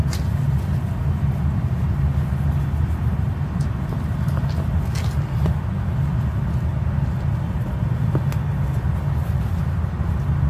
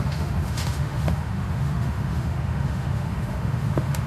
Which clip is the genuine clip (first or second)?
first